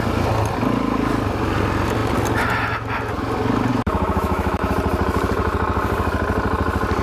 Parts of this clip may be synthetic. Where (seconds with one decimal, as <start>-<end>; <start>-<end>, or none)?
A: 3.7-4.7